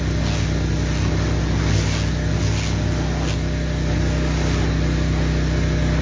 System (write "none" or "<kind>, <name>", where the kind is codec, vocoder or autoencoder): none